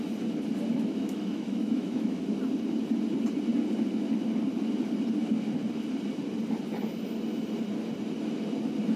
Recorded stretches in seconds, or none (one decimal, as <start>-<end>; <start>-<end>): 0.0-0.7; 2.3-9.0